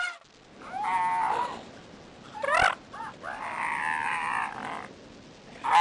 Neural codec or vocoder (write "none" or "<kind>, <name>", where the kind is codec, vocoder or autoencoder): none